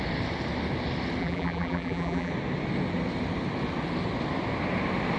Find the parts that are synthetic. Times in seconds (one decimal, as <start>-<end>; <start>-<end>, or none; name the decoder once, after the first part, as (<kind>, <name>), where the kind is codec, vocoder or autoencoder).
1.2-2.3 (vocoder, BigVGAN v2)